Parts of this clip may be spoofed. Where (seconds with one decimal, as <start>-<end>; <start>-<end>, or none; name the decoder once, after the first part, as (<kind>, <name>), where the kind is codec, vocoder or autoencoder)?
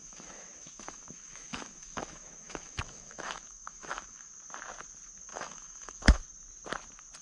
0.0-4.3 (autoencoder, DAC-VAE); 5.3-6.2